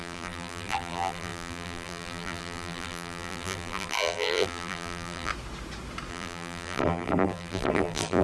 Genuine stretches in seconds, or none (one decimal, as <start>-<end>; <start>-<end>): 5.3-6.1